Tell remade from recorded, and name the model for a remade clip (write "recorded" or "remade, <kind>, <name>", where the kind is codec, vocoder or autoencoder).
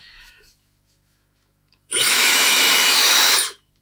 remade, autoencoder, DAC-VAE